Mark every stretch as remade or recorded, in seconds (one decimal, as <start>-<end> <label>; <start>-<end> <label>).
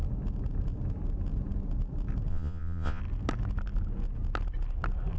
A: 0.0-2.3 recorded; 2.3-3.0 remade; 3.0-5.2 recorded